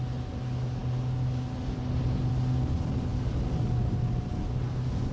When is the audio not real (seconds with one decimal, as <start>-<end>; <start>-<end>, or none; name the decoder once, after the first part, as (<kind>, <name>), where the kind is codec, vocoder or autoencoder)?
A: 3.1-3.9 (vocoder, BigVGAN v2)